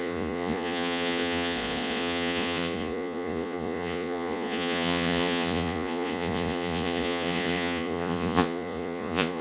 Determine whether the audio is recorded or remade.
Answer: remade